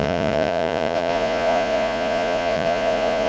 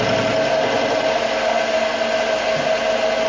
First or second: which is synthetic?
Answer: first